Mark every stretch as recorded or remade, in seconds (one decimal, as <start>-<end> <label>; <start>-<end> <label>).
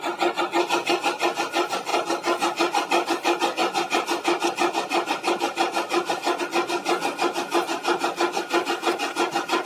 0.0-9.7 recorded